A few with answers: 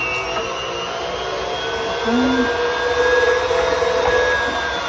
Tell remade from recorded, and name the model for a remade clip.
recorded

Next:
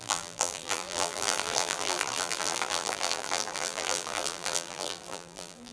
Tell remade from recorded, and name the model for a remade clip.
remade, vocoder, BigVGAN v2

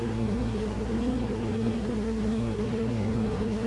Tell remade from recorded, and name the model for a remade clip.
remade, codec, SNAC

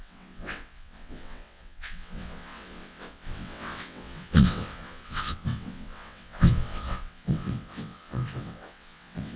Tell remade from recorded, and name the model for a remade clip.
remade, vocoder, WaveNeXt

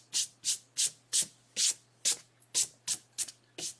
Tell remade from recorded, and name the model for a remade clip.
recorded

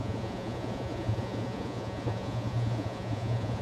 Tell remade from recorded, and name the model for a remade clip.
remade, vocoder, Vocos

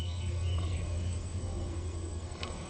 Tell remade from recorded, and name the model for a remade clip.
remade, codec, SNAC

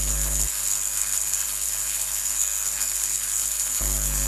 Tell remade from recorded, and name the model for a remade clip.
remade, codec, SNAC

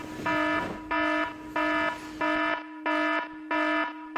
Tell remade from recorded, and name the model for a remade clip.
recorded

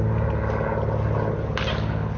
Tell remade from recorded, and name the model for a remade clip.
recorded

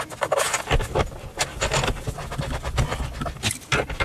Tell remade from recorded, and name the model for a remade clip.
recorded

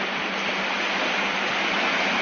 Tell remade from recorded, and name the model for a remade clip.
recorded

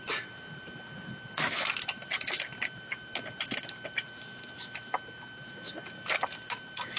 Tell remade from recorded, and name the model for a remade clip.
recorded